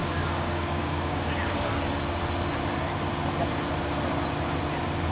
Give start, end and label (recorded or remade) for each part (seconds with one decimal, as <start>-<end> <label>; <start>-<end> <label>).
0.0-1.8 remade; 1.8-5.1 recorded